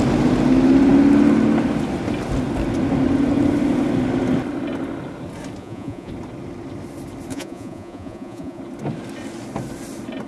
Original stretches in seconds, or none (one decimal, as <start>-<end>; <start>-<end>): 0.0-5.6; 6.1-7.3; 8.6-10.3